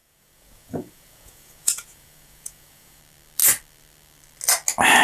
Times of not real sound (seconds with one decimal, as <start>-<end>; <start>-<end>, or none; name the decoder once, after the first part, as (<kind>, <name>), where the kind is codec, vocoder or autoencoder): 0.0-3.0 (vocoder, Vocos)